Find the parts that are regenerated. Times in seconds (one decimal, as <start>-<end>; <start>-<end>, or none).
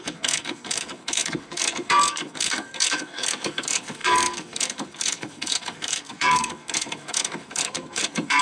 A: 0.0-8.4